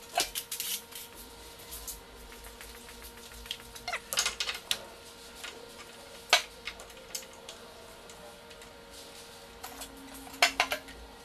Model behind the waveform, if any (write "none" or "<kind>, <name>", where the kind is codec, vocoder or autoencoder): none